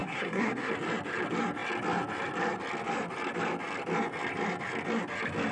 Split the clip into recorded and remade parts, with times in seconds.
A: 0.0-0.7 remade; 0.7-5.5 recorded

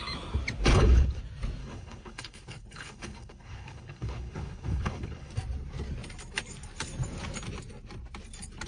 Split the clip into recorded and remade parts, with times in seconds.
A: 0.0-0.7 recorded; 0.7-1.2 remade; 1.2-1.6 recorded; 1.6-5.3 remade; 5.3-8.7 recorded

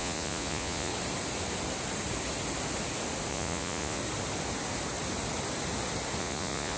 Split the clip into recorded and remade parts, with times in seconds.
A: 0.0-0.9 remade; 0.9-3.3 recorded; 3.3-4.0 remade; 4.0-6.2 recorded; 6.2-6.8 remade

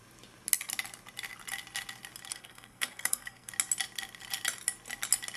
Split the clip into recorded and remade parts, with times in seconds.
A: 0.0-2.3 recorded; 2.3-3.5 remade; 3.5-5.4 recorded